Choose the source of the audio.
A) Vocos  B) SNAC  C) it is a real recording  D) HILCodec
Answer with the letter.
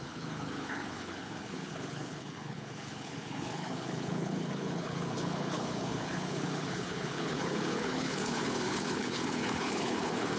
D